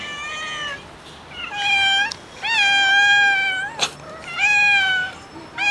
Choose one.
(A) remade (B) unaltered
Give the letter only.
B